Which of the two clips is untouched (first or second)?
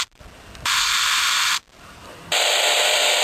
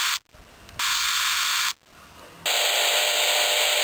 second